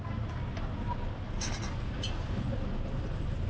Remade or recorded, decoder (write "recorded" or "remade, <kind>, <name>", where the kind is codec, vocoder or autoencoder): recorded